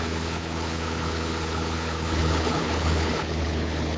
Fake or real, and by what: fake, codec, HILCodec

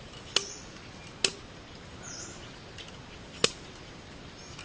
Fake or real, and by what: real